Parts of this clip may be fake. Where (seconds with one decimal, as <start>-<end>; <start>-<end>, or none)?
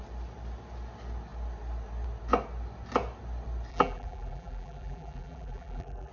3.7-6.1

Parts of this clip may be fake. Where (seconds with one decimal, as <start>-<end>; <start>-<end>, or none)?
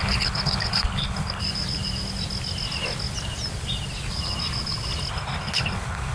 0.0-1.4; 5.1-6.1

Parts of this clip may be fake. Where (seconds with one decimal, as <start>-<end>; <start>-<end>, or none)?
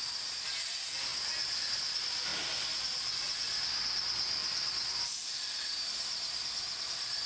none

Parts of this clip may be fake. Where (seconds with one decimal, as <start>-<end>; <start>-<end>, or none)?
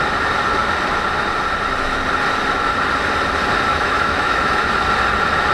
3.7-4.7